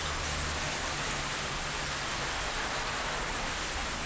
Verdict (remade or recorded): recorded